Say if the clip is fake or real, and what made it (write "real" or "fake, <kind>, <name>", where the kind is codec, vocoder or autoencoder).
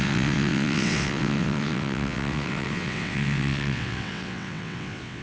fake, vocoder, WaveNeXt